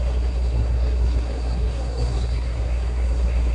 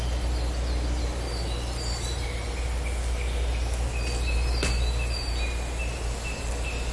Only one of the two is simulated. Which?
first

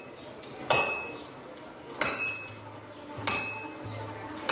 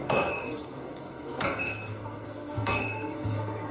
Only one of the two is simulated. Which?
second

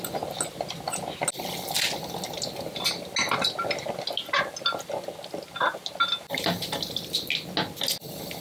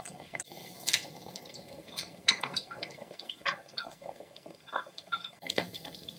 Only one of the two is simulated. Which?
second